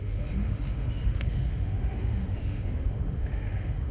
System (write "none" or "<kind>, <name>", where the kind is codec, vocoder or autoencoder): autoencoder, DAC-VAE